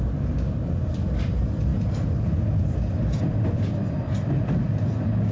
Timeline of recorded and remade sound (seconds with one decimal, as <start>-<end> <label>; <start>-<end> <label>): 0.0-5.3 recorded

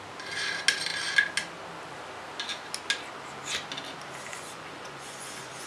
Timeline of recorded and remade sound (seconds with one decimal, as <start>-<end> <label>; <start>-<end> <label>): 0.0-4.3 recorded; 4.3-5.7 remade

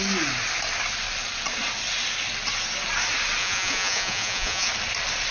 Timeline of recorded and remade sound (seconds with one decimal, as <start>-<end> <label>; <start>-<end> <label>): 0.0-3.4 recorded; 3.4-4.7 remade; 4.7-5.3 recorded

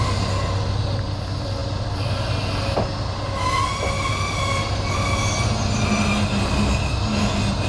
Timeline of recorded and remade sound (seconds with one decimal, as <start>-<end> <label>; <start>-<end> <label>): 0.0-7.7 recorded

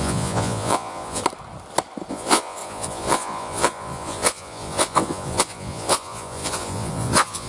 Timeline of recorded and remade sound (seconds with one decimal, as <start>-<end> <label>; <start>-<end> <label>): 0.0-1.2 remade; 1.2-2.1 recorded; 2.1-7.5 remade

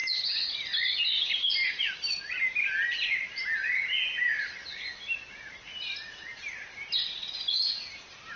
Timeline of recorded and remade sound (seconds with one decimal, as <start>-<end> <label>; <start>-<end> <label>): 0.0-8.4 recorded